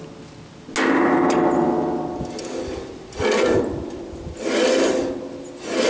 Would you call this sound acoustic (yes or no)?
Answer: yes